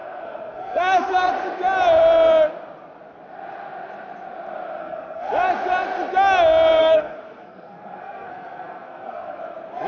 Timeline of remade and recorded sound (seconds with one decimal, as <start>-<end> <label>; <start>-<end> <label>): 0.0-1.3 remade; 1.3-4.8 recorded; 4.8-5.3 remade; 5.3-6.8 recorded; 6.8-9.4 remade; 9.4-9.9 recorded